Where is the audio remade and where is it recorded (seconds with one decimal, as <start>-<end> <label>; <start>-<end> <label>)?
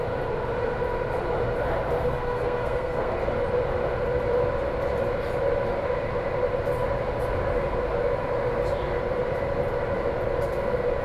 0.0-2.0 recorded; 2.0-3.1 remade; 3.1-11.0 recorded